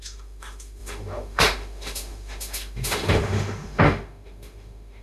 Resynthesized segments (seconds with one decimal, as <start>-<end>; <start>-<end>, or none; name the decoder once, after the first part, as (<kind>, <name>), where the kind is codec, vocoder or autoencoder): 0.0-5.0 (autoencoder, DAC-VAE)